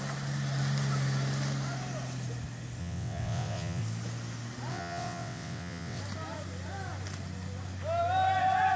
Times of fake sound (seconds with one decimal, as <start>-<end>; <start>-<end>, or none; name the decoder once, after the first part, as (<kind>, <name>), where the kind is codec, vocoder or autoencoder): 2.8-3.8 (vocoder, WaveNeXt); 4.7-6.0